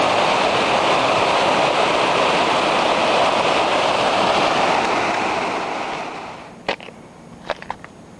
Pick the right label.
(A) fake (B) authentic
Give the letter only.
B